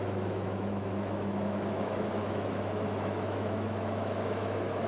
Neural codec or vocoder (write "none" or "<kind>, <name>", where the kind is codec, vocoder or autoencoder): autoencoder, DAC-VAE